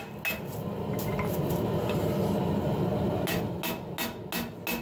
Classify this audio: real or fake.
real